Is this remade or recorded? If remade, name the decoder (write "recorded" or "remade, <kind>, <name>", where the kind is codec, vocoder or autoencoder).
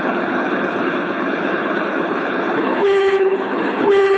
remade, codec, HILCodec